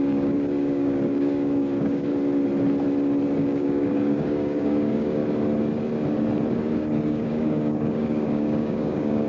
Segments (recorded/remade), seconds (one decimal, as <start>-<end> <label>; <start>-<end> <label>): 0.0-2.1 remade; 2.1-3.4 recorded; 3.4-5.2 remade; 5.2-6.7 recorded; 6.7-9.3 remade